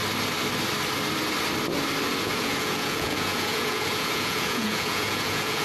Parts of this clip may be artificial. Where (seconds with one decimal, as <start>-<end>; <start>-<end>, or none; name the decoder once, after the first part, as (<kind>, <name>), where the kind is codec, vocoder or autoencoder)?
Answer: 2.2-5.6 (vocoder, Vocos)